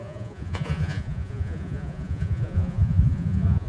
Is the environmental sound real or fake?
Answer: fake